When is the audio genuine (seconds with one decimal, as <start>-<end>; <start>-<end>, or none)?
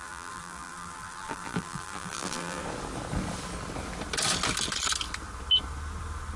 2.6-6.4